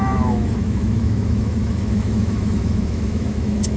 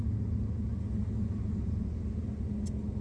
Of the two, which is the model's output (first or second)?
first